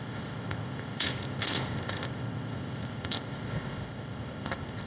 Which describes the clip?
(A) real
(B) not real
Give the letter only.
B